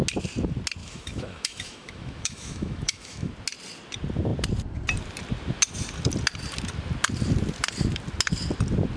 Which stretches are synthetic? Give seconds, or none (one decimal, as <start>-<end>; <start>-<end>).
0.8-3.3